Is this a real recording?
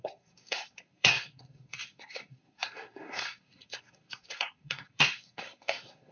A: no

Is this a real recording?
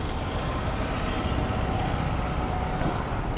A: yes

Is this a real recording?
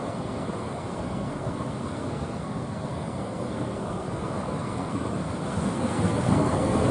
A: no